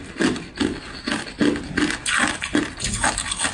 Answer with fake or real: real